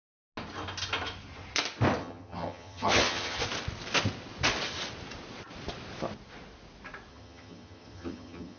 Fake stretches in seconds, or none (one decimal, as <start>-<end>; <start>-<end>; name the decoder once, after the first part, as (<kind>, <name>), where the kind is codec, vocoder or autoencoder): 2.0-3.4 (vocoder, HiFi-GAN); 7.1-8.6